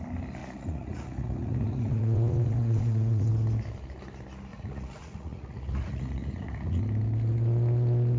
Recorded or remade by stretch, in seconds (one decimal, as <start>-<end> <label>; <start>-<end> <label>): 0.0-0.4 recorded; 0.4-3.3 remade; 3.3-4.5 recorded; 4.5-6.8 remade; 6.8-8.2 recorded